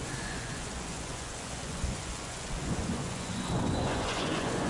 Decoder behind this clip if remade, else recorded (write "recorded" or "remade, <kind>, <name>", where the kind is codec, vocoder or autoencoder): remade, vocoder, Vocos